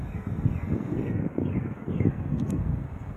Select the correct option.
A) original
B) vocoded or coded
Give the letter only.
B